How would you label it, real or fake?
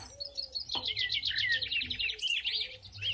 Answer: real